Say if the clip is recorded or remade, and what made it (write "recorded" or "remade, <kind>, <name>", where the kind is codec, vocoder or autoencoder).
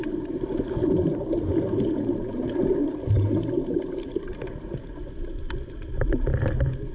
recorded